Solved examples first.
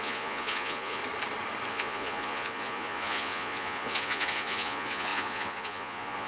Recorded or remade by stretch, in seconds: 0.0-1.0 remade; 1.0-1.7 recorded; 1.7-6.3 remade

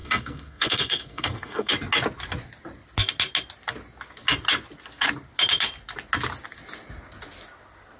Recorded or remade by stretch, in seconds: 0.0-1.7 remade; 1.7-8.0 recorded

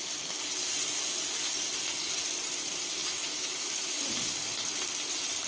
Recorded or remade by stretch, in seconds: 0.0-3.0 recorded; 3.0-4.0 remade; 4.0-5.5 recorded

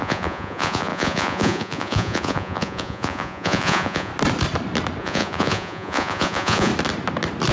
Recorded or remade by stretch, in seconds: 0.0-4.1 remade; 4.1-5.0 recorded; 5.0-6.7 remade; 6.7-7.5 recorded

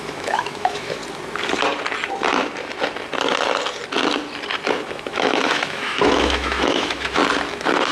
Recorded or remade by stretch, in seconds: 0.0-1.0 remade; 1.0-4.9 recorded; 4.9-7.2 remade; 7.2-7.9 recorded

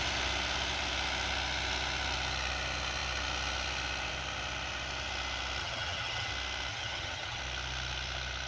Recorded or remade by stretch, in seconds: 0.0-5.6 recorded; 5.6-6.3 remade; 6.3-6.7 recorded; 6.7-7.4 remade; 7.4-8.5 recorded